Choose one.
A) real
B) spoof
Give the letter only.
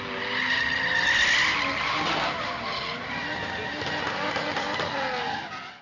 A